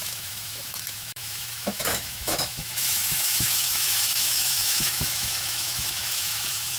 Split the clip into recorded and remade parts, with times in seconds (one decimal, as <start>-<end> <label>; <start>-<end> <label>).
0.0-6.8 remade

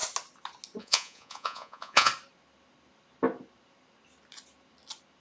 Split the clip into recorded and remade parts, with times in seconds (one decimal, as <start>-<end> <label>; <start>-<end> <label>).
0.0-0.8 recorded; 0.8-2.1 remade; 2.1-5.2 recorded

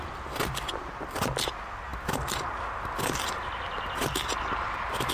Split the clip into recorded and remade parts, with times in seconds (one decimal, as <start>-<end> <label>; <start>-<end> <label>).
0.0-5.1 recorded

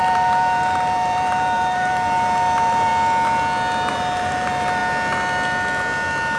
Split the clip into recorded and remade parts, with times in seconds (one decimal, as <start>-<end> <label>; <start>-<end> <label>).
0.0-2.9 remade; 2.9-3.9 recorded; 3.9-4.8 remade; 4.8-6.4 recorded

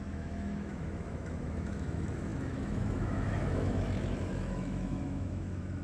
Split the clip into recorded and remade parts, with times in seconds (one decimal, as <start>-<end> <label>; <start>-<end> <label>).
0.0-5.8 remade